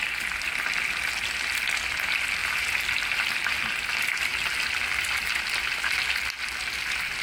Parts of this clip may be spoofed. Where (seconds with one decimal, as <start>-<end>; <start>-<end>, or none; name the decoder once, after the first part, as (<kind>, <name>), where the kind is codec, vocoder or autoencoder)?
2.4-3.2 (vocoder, BigVGAN v2)